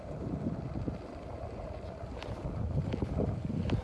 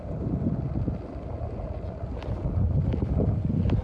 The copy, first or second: first